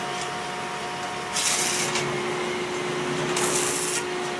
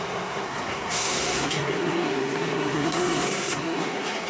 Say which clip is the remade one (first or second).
second